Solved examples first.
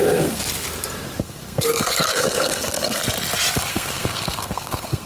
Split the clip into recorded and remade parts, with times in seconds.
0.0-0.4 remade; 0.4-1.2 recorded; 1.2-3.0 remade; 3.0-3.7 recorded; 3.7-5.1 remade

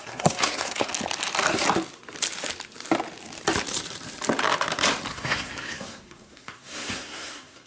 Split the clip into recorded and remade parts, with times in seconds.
0.0-0.9 remade; 0.9-5.1 recorded; 5.1-7.7 remade

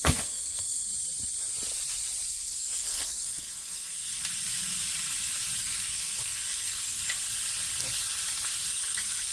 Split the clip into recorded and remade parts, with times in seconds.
0.0-0.9 remade; 0.9-2.3 recorded; 2.3-4.2 remade; 4.2-5.6 recorded; 5.6-7.0 remade; 7.0-8.7 recorded; 8.7-9.3 remade

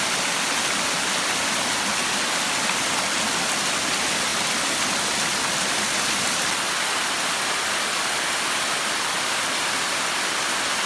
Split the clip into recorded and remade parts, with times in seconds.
0.0-10.9 recorded